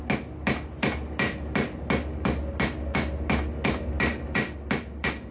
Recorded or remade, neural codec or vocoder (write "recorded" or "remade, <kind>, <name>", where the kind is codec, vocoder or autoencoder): recorded